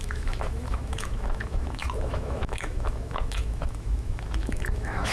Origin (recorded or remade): remade